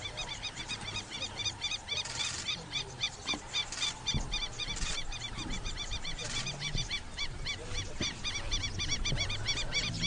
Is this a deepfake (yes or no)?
yes